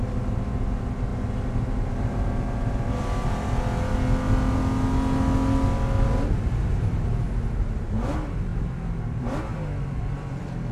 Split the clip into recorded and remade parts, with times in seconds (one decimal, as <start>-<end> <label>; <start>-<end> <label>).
0.0-8.5 recorded; 8.5-10.7 remade